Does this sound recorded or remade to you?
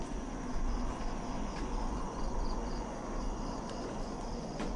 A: remade